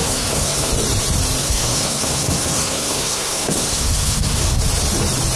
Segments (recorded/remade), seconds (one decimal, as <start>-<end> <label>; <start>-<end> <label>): 0.0-0.7 remade; 0.7-1.4 recorded; 1.4-4.6 remade; 4.6-5.4 recorded